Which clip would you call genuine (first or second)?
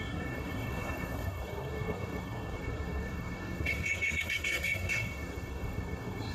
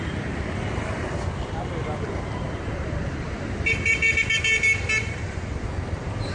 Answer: second